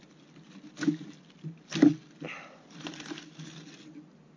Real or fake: real